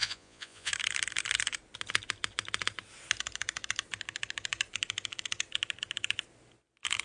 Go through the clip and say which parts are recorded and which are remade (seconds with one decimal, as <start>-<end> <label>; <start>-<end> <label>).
0.0-0.7 remade; 0.7-7.0 recorded